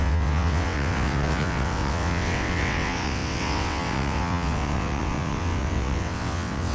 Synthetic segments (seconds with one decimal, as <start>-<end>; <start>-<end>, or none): 0.0-6.7